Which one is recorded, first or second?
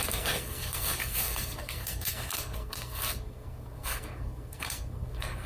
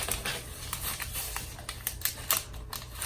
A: second